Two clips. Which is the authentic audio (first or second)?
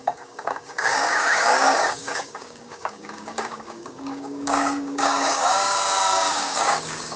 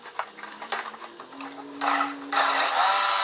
second